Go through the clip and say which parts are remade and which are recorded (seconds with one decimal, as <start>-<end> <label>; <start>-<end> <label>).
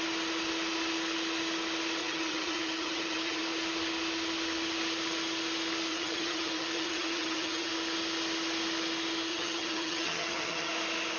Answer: 0.0-2.0 recorded; 2.0-3.4 remade; 3.4-5.9 recorded; 5.9-7.7 remade; 7.7-9.3 recorded; 9.3-10.7 remade; 10.7-11.2 recorded